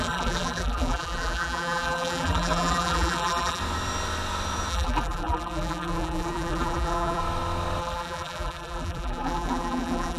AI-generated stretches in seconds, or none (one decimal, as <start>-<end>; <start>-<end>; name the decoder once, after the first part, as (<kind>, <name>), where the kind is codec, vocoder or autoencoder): 0.0-3.6 (vocoder, BigVGAN v2); 4.7-7.2; 7.8-10.2